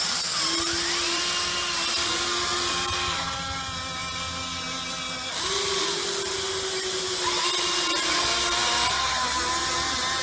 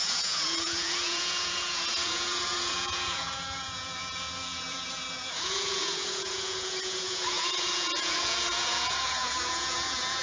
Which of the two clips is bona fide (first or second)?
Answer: first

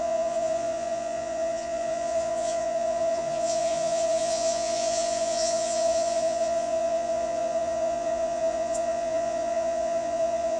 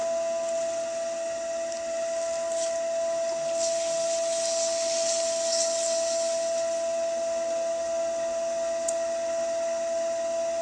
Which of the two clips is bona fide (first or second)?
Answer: second